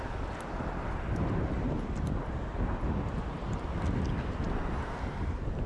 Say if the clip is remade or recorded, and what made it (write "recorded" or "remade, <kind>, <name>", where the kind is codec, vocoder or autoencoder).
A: recorded